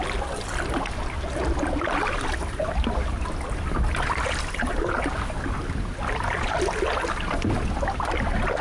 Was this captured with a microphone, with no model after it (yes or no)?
yes